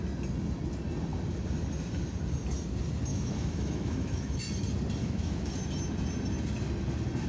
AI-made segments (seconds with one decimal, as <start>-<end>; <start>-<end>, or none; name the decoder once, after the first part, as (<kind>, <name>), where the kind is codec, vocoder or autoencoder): 3.1-4.4 (autoencoder, DAC-VAE); 5.0-5.5